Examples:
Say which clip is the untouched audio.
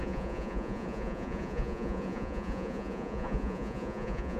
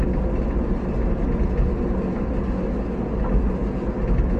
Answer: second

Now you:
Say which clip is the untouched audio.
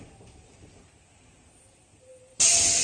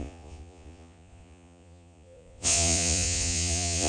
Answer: first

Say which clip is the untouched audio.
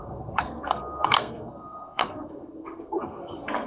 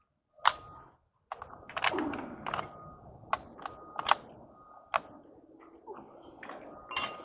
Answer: second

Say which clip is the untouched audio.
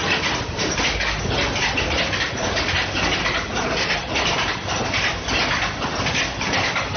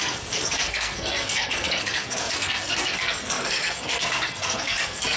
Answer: first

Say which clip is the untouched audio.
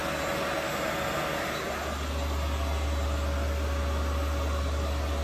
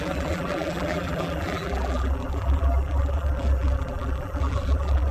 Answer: first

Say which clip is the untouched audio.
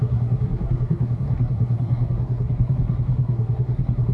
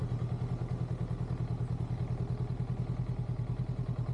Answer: second